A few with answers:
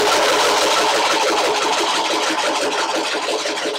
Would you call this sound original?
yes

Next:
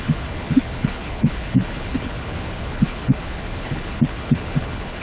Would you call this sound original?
no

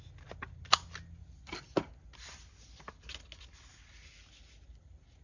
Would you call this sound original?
yes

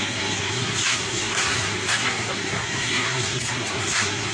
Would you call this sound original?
no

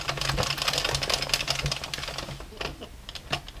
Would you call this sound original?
yes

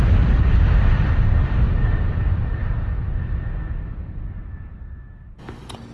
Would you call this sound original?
yes